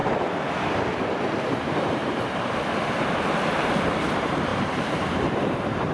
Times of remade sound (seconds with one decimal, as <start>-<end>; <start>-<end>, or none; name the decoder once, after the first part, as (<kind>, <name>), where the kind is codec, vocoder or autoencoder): 1.2-2.0 (vocoder, BigVGAN v2); 4.1-5.9